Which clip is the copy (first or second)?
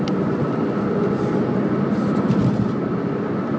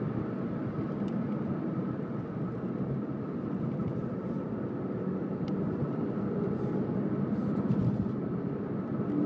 second